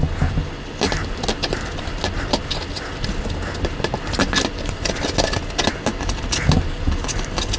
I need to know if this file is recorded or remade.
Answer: recorded